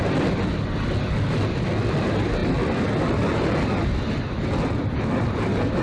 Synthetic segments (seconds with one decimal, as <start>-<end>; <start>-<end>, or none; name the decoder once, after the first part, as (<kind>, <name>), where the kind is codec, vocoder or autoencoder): none